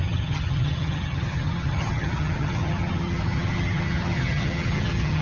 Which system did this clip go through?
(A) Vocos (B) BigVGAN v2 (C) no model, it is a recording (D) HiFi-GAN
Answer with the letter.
D